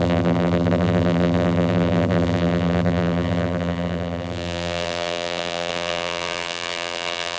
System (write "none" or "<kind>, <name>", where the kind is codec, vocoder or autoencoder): vocoder, BigVGAN v2